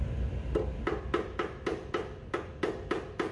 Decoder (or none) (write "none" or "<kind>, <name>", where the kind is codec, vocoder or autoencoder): none